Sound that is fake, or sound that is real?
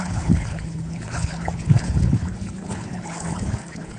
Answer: fake